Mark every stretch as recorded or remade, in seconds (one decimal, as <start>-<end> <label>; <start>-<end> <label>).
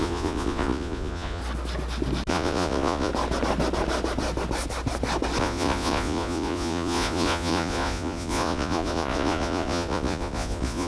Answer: 0.0-1.4 remade; 1.4-2.3 recorded; 2.3-3.1 remade; 3.1-5.4 recorded; 5.4-10.9 remade